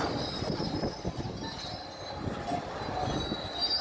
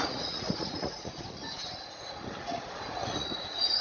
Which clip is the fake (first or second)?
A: second